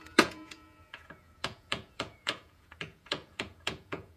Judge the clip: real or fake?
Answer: fake